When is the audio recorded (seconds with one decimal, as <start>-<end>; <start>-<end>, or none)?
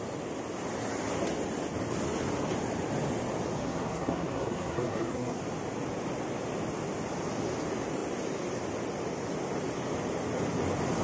0.0-3.6; 5.4-11.0